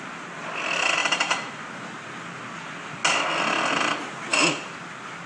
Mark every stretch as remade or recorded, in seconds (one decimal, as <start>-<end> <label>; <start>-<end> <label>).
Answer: 0.0-5.3 recorded